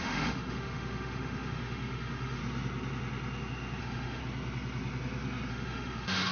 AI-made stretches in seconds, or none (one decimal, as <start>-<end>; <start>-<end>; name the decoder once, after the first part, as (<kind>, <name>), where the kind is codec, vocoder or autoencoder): 0.0-2.4 (autoencoder, DAC-VAE); 3.8-4.2; 5.5-6.3